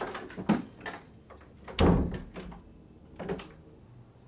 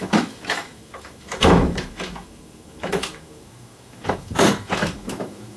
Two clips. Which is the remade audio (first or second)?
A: second